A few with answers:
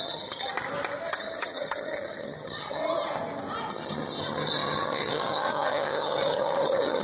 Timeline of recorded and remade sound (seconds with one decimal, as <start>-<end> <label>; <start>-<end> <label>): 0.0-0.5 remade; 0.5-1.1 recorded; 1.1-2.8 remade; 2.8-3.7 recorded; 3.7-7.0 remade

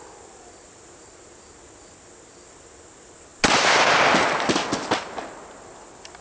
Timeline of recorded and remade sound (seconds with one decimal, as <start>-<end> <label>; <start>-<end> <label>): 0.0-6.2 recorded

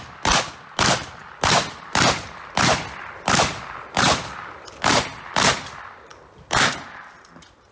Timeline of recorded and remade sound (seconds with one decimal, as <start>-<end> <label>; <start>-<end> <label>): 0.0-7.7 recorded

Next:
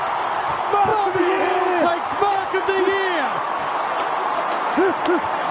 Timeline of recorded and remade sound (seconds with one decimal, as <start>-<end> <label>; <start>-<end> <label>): 0.0-5.5 recorded

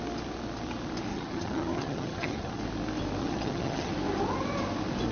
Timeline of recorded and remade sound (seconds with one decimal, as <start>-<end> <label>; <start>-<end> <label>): 0.0-1.1 recorded; 1.1-2.6 remade; 2.6-3.2 recorded; 3.2-3.9 remade; 3.9-5.1 recorded

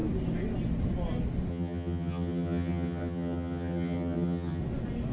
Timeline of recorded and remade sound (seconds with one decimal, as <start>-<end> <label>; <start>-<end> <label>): 0.0-1.5 recorded; 1.5-4.6 remade; 4.6-5.1 recorded

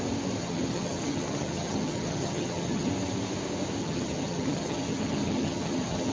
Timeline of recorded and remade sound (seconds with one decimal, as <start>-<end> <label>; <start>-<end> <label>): 0.0-0.4 recorded; 0.4-2.9 remade; 2.9-3.8 recorded; 3.8-6.1 remade

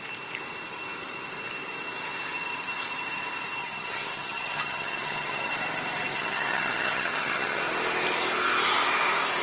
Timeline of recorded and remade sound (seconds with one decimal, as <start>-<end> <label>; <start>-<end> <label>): 0.0-3.6 recorded; 3.6-5.5 remade; 5.5-6.1 recorded; 6.1-7.6 remade; 7.6-9.4 recorded